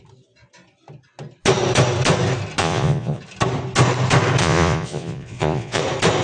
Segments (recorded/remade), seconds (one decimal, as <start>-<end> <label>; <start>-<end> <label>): 0.0-2.6 recorded; 2.6-3.2 remade; 3.2-4.4 recorded; 4.4-5.8 remade; 5.8-6.2 recorded